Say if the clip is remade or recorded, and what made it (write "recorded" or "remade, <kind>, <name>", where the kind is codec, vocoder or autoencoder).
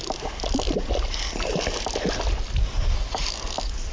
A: recorded